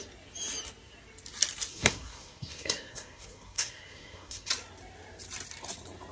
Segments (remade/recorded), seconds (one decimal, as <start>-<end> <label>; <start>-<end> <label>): 0.0-1.7 recorded; 1.7-4.5 remade; 4.5-6.1 recorded